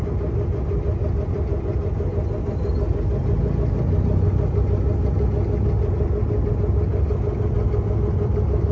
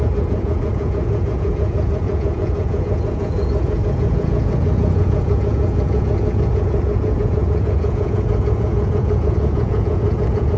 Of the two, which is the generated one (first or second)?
second